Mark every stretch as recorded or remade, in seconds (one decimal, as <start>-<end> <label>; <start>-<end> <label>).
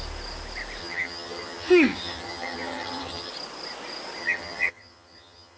0.0-0.8 recorded; 0.8-3.3 remade; 3.3-4.2 recorded; 4.2-5.6 remade